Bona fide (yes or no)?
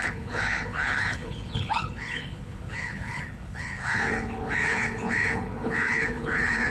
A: no